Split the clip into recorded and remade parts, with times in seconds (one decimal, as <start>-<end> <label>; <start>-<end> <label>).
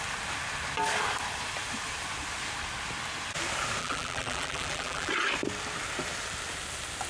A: 0.0-3.8 recorded; 3.8-5.1 remade; 5.1-7.1 recorded